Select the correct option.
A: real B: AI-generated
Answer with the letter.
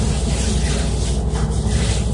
A